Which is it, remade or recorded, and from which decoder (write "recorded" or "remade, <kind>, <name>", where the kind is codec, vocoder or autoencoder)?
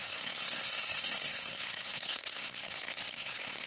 remade, codec, SNAC